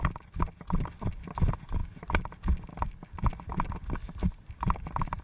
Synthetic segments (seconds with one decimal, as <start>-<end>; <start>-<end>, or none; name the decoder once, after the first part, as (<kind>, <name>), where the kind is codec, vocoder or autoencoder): none